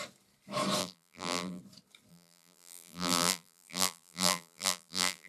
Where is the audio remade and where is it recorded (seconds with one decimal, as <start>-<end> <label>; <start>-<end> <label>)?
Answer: 0.0-0.8 recorded; 0.8-1.6 remade; 1.6-2.1 recorded; 2.1-5.3 remade